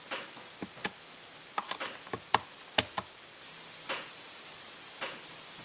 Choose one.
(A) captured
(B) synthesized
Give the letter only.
A